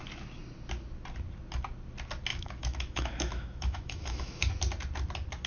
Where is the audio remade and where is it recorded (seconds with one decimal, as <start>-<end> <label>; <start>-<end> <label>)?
0.0-2.3 recorded; 2.3-4.5 remade; 4.5-5.5 recorded